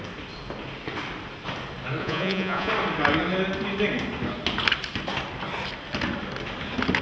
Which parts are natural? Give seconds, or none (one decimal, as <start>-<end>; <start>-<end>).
0.0-2.0; 2.7-7.0

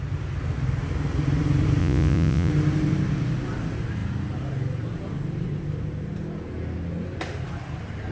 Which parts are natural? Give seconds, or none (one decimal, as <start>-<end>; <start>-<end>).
0.0-1.8; 2.5-8.1

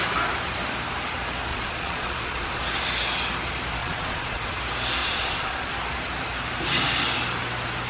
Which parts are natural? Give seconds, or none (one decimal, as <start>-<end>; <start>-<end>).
0.0-1.5; 2.6-3.8; 4.6-5.0; 5.7-7.9

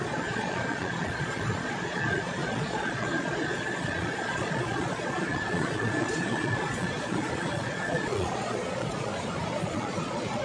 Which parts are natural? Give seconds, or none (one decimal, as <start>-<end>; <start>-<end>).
9.1-9.6

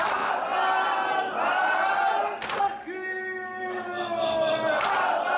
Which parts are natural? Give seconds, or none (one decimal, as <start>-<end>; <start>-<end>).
0.0-5.4

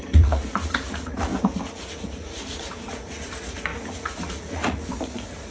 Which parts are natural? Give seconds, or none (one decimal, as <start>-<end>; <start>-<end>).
1.3-1.9

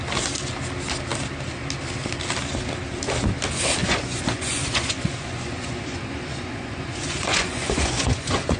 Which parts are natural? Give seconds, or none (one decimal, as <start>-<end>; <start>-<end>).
0.0-3.8

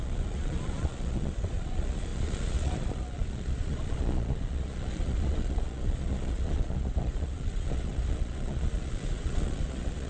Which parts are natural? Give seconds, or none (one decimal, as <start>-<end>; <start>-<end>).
none